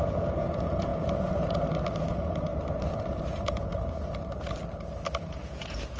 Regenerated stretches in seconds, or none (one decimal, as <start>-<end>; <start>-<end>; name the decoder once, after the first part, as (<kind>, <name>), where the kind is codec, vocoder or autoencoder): 0.0-0.9 (vocoder, Vocos); 2.1-2.5; 3.2-3.7; 5.2-6.0